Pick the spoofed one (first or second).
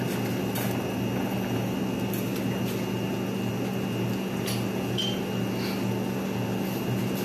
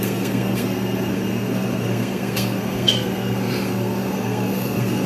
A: second